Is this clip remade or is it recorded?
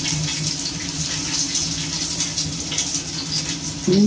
recorded